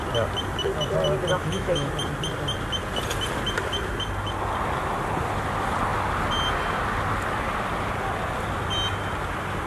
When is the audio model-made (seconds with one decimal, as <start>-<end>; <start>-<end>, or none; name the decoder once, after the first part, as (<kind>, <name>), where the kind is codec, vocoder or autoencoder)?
1.4-1.9 (autoencoder, DAC-VAE)